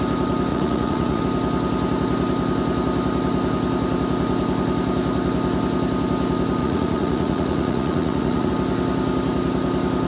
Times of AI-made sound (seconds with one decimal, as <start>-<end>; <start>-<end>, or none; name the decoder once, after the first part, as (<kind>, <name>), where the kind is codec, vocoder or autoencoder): 0.5-1.2 (vocoder, Vocos); 6.6-8.5